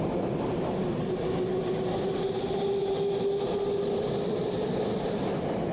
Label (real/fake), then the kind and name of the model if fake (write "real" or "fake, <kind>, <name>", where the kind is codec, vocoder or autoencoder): real